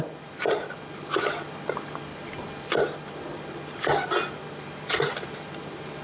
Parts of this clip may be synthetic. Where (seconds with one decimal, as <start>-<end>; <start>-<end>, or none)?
2.1-2.7